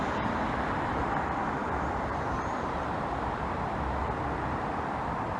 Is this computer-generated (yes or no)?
yes